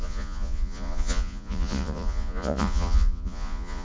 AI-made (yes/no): yes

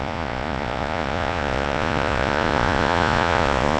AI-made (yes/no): yes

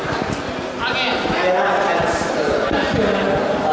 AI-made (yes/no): no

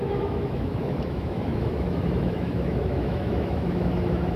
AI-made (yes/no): yes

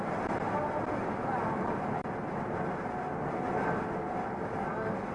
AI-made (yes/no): no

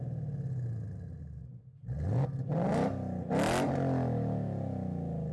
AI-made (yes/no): no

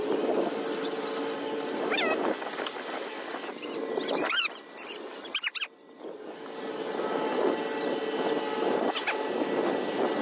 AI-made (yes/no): no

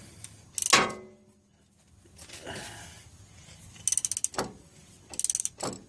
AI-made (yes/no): no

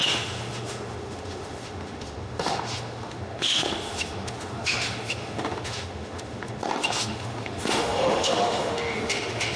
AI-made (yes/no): yes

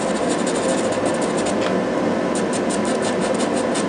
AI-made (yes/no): no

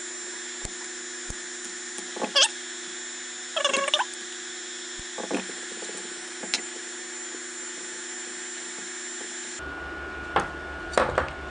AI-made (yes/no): no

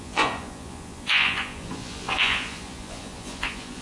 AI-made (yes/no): yes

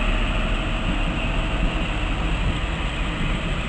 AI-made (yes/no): no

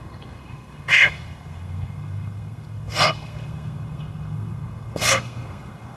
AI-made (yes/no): yes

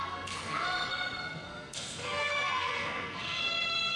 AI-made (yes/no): yes